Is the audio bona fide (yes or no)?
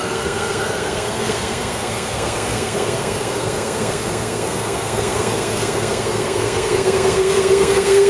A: no